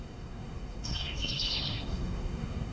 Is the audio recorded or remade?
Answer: remade